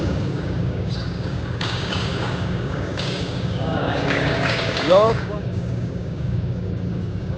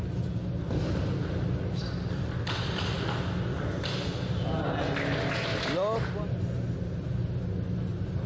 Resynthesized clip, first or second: first